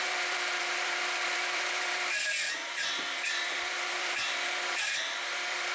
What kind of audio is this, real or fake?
fake